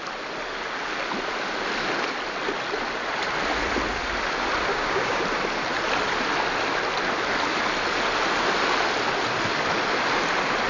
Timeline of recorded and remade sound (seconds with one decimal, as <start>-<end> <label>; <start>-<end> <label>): 0.0-4.7 recorded; 4.7-5.2 remade; 5.2-10.7 recorded

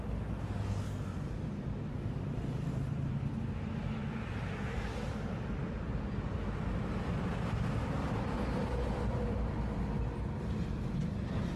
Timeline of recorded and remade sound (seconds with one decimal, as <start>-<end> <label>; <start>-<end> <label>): 0.0-1.1 recorded; 1.1-3.2 remade; 3.2-11.6 recorded

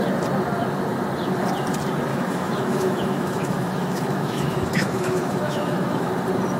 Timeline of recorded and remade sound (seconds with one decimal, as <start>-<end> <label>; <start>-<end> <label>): 0.0-2.1 recorded; 2.1-6.1 remade; 6.1-6.6 recorded

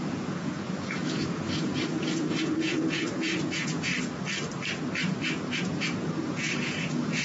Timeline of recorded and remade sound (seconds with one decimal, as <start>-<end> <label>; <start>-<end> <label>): 0.0-3.9 remade; 3.9-5.2 recorded; 5.2-7.2 remade

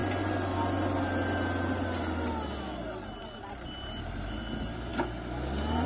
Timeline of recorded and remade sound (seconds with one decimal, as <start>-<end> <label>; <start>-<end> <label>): 0.0-5.9 recorded

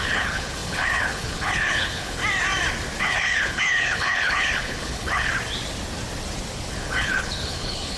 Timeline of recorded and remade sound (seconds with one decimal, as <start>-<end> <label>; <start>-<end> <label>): 0.0-2.2 remade; 2.2-3.0 recorded; 3.0-5.3 remade; 5.3-6.7 recorded; 6.7-8.0 remade

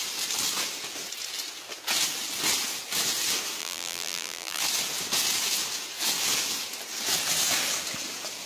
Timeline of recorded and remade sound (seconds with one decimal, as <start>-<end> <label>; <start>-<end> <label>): 0.0-3.6 recorded; 3.6-4.6 remade; 4.6-8.5 recorded